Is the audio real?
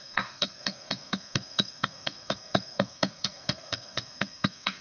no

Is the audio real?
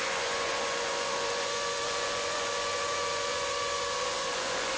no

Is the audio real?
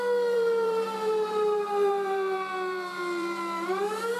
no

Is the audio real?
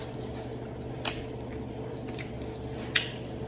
yes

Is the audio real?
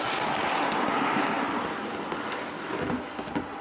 yes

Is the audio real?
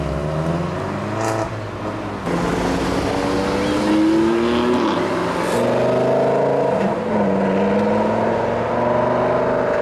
yes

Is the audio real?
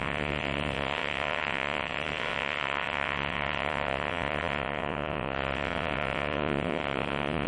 no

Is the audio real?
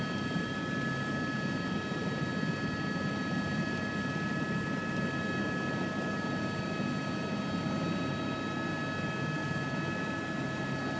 yes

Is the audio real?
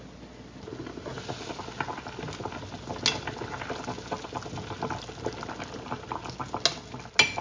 yes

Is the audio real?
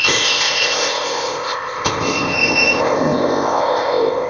no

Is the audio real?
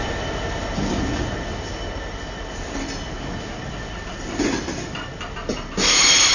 yes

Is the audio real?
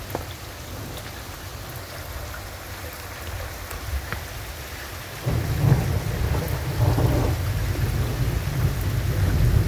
yes